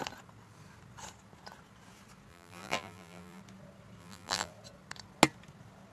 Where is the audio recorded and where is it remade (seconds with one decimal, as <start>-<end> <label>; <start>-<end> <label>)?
0.0-2.3 recorded; 2.3-3.4 remade; 3.4-4.0 recorded; 4.0-4.5 remade; 4.5-5.9 recorded